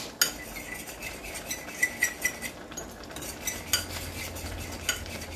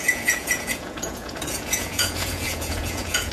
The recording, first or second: first